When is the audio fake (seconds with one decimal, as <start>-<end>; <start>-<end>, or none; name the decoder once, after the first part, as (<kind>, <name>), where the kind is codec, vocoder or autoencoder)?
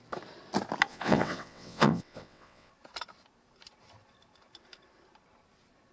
0.9-2.7 (vocoder, WaveNeXt)